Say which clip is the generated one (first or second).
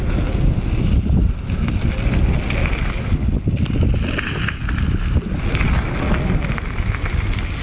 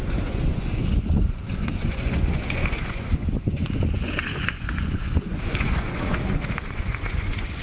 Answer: second